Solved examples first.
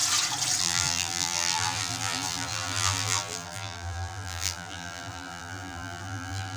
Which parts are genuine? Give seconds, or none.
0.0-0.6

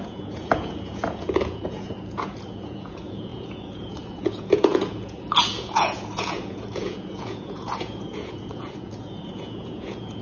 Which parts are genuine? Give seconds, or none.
none

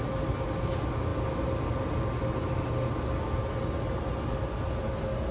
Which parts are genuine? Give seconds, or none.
0.0-5.3

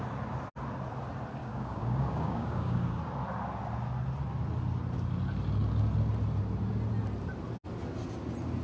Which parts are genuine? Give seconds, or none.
0.0-1.4; 3.0-8.6